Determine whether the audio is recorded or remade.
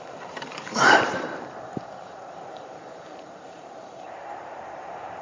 remade